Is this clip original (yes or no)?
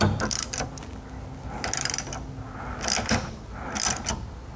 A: yes